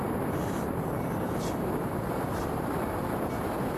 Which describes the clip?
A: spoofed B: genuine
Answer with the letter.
A